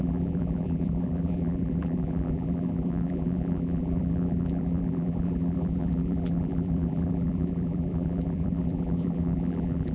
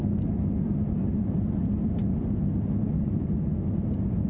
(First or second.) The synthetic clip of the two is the first